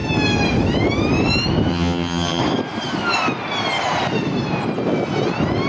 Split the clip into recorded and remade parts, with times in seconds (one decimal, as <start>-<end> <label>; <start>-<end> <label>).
0.0-1.7 recorded; 1.7-2.4 remade; 2.4-5.7 recorded